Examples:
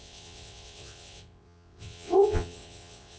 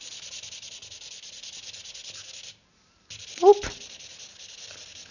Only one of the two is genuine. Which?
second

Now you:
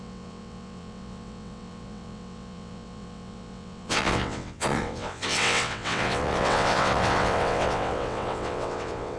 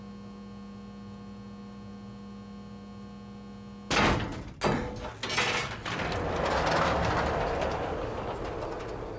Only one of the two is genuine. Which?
second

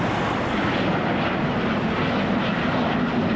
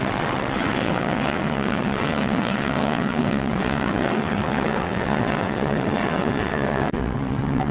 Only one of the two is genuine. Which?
first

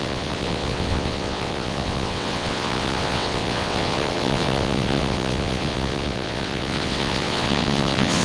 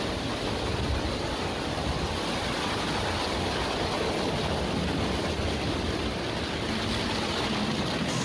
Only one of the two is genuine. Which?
second